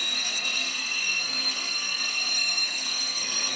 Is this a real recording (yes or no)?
no